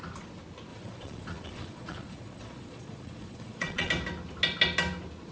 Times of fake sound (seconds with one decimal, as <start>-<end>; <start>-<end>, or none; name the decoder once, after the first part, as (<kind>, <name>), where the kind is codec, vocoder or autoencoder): 0.7-3.9 (vocoder, Vocos)

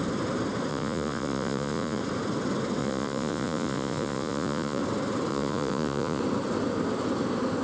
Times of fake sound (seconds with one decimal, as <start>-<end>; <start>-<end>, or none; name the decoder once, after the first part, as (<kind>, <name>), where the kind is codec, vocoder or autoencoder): 0.7-2.0 (vocoder, Vocos); 2.8-4.8; 5.3-6.2